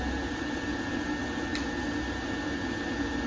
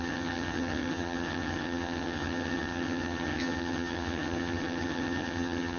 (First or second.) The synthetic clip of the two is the second